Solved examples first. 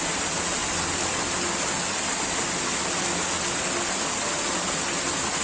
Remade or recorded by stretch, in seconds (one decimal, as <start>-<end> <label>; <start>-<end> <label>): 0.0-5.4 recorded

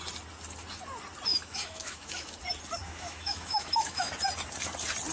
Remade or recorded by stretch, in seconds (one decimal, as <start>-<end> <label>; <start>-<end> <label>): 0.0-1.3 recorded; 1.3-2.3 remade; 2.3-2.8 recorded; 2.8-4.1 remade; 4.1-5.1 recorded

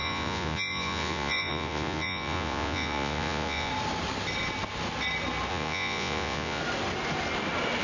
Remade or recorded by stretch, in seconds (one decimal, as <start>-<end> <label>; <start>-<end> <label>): 0.0-3.7 remade; 3.7-5.5 recorded; 5.5-6.6 remade; 6.6-7.8 recorded

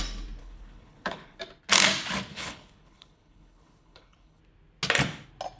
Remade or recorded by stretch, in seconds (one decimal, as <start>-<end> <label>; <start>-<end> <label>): 0.0-0.4 recorded; 0.4-1.4 remade; 1.4-2.3 recorded; 2.3-4.4 remade; 4.4-5.6 recorded

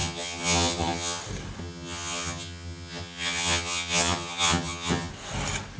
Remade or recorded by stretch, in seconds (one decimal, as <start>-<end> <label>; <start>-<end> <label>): 0.0-1.2 remade; 1.2-1.6 recorded; 1.6-5.1 remade; 5.1-5.8 recorded

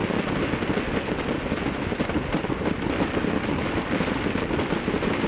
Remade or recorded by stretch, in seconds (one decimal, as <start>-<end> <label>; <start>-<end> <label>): 0.0-5.3 recorded

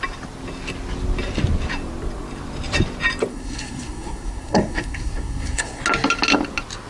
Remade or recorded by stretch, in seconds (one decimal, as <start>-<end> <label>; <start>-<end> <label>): 0.0-3.3 recorded; 3.3-5.8 remade; 5.8-6.9 recorded